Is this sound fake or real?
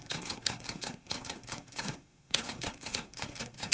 fake